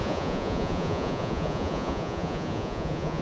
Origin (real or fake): fake